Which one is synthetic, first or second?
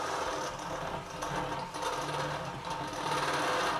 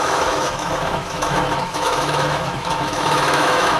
second